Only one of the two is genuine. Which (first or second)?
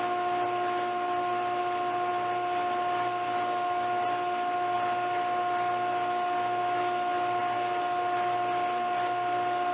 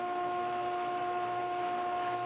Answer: first